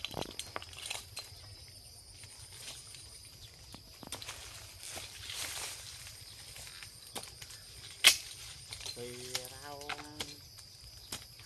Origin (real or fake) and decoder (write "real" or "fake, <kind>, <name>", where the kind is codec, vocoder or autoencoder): real